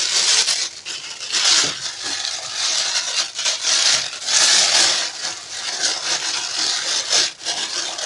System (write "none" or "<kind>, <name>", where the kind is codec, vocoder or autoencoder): none